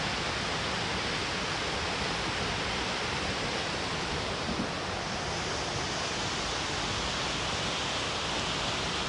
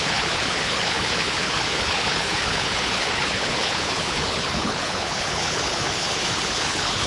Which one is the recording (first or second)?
first